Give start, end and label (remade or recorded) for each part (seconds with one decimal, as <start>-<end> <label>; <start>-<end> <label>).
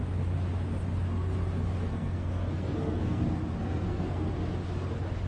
0.0-1.9 recorded; 1.9-3.2 remade; 3.2-3.6 recorded; 3.6-4.3 remade; 4.3-5.3 recorded